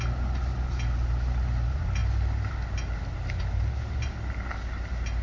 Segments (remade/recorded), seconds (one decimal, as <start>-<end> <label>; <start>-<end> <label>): 0.0-5.2 recorded